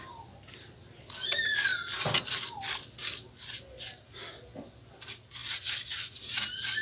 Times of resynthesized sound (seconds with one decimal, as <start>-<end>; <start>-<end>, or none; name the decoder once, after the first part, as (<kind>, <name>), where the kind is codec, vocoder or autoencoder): none